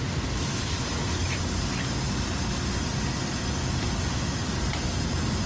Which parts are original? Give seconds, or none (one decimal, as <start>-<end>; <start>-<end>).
0.9-4.0